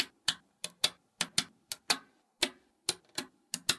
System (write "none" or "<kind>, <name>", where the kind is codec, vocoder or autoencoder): none